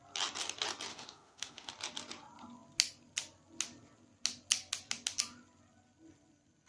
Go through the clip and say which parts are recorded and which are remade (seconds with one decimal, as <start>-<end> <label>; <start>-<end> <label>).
0.0-0.9 recorded; 0.9-1.7 remade; 1.7-6.7 recorded